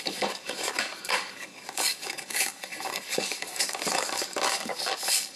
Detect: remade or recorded remade